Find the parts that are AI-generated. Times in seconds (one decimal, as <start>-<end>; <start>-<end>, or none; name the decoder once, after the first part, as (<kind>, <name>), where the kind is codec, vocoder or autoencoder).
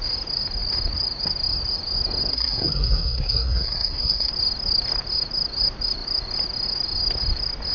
2.3-4.3 (codec, SNAC)